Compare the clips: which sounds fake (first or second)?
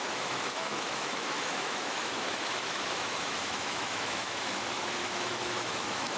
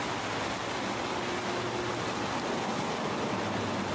first